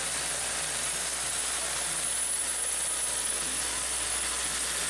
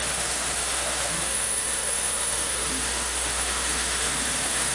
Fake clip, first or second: second